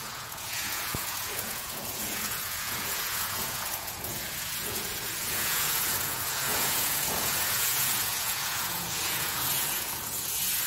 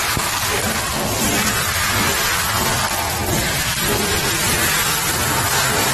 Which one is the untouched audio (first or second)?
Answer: second